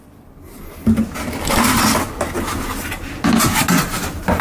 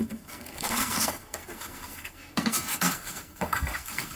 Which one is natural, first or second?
first